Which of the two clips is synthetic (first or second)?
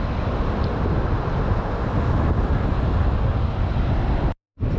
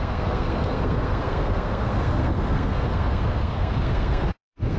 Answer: second